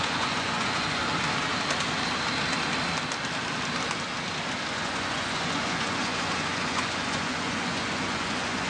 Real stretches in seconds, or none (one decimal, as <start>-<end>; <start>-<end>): 1.0-4.7